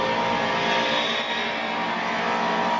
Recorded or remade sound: recorded